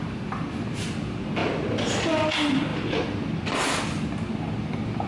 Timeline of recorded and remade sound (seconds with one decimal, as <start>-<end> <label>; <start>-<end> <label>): 0.0-5.1 recorded